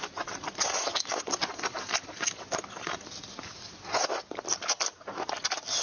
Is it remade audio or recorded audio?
recorded